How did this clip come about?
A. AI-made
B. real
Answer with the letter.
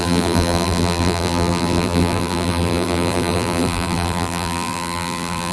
A